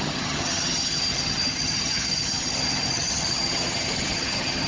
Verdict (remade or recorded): remade